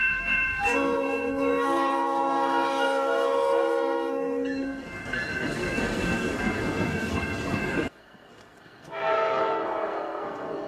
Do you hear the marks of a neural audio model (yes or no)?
yes